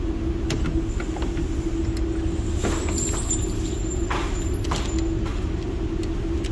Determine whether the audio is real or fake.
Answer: real